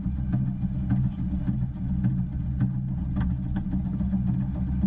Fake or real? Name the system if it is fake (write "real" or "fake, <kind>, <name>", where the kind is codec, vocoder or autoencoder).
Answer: real